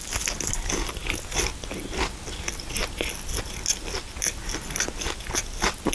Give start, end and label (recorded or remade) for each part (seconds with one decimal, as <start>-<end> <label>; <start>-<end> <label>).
0.0-5.9 recorded